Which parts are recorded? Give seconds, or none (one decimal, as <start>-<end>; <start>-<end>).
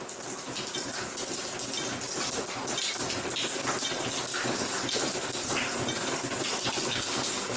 0.0-6.9